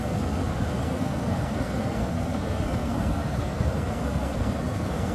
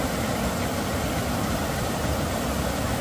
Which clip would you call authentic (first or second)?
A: second